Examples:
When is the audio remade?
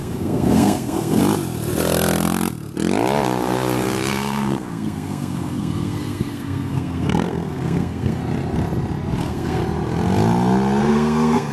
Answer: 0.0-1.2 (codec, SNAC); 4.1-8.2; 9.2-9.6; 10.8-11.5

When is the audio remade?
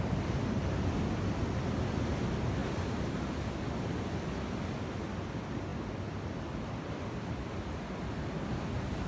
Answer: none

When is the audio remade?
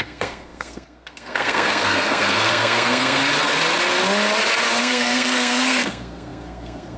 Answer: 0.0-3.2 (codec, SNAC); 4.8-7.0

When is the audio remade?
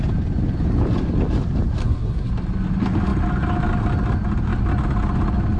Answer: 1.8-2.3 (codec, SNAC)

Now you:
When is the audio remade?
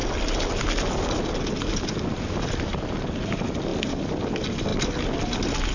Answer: none